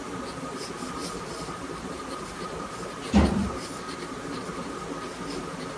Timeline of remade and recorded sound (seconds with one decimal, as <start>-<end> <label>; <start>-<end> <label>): 0.0-1.0 recorded; 1.0-3.6 remade; 3.6-5.8 recorded

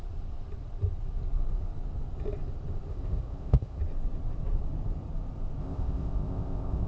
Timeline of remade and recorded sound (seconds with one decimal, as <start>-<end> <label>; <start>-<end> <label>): 0.0-2.9 recorded; 2.9-3.8 remade; 3.8-5.6 recorded; 5.6-6.9 remade

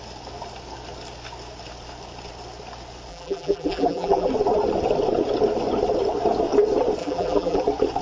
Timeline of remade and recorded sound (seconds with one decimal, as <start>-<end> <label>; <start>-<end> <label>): 0.0-3.1 recorded; 3.1-4.3 remade; 4.3-7.0 recorded; 7.0-7.6 remade; 7.6-8.0 recorded

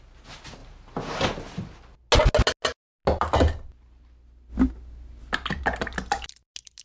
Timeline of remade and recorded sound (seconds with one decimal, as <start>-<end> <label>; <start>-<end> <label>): 0.0-6.8 recorded

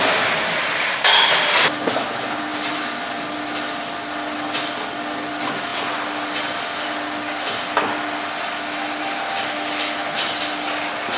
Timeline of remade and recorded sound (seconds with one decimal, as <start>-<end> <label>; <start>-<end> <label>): 0.0-11.2 recorded